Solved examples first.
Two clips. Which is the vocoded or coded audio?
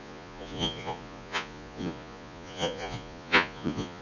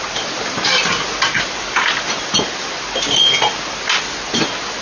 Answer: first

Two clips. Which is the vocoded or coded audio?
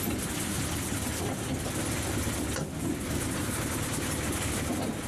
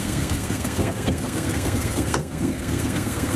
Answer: second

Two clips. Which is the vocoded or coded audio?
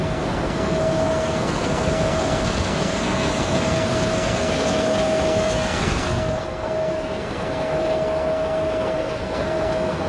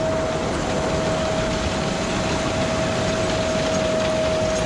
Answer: first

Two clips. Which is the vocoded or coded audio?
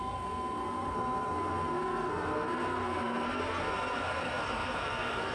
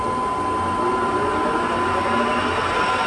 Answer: first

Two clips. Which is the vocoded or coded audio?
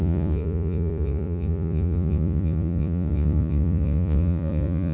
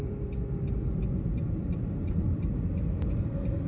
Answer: first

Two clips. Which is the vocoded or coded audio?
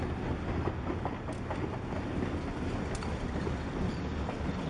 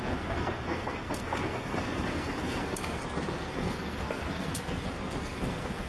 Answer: second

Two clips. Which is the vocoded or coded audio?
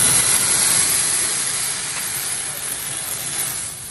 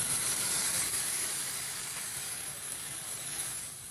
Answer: second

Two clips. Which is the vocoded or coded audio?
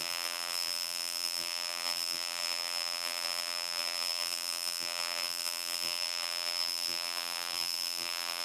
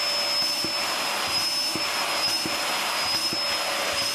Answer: first